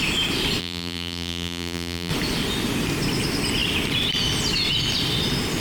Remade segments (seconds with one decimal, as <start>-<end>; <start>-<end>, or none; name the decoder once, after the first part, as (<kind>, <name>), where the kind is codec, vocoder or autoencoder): 0.6-2.1 (vocoder, BigVGAN v2)